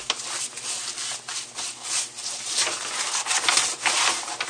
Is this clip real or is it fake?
real